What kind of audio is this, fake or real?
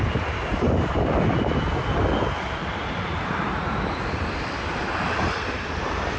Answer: fake